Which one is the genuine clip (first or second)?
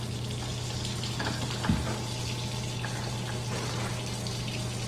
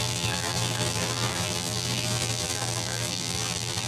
first